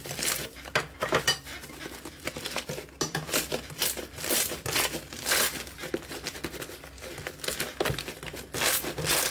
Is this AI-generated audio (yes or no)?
no